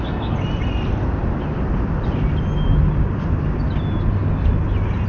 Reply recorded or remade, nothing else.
recorded